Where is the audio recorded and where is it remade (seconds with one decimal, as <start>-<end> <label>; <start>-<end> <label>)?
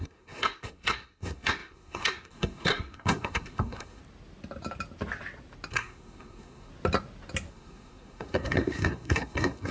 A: 0.0-4.0 remade; 4.0-5.7 recorded; 5.7-6.7 remade; 6.7-7.5 recorded; 7.5-9.7 remade